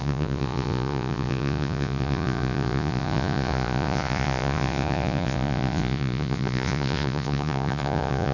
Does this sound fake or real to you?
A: fake